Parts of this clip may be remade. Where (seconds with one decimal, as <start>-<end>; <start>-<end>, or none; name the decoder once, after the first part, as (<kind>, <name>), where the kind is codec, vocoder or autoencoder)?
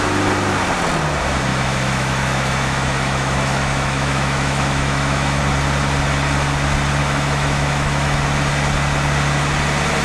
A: 1.5-5.4 (autoencoder, DAC-VAE); 7.0-8.2